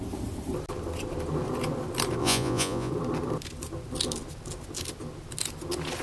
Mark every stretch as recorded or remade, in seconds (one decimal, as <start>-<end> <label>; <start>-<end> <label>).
0.0-2.2 recorded; 2.2-2.9 remade; 2.9-6.0 recorded